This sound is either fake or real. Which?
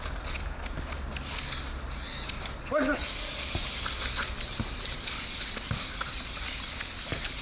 real